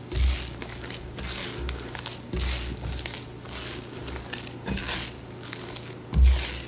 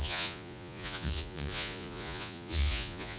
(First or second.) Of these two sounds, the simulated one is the second